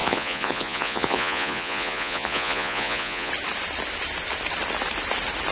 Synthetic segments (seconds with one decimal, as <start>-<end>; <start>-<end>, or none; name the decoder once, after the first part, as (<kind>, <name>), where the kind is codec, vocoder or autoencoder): 0.0-3.3 (vocoder, Vocos)